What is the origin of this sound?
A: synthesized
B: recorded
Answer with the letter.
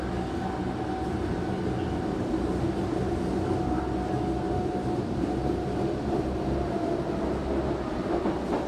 B